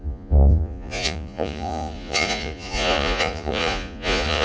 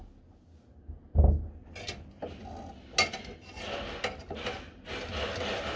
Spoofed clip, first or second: first